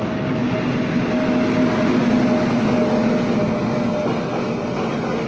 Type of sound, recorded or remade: recorded